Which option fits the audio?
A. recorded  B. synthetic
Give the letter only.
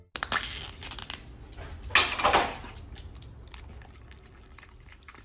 A